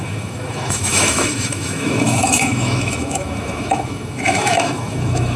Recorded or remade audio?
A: remade